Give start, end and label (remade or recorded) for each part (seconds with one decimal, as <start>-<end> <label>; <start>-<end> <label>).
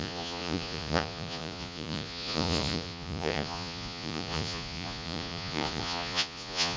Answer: 0.0-6.8 remade